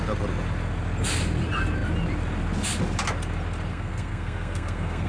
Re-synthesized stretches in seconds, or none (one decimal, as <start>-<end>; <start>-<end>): 3.7-5.1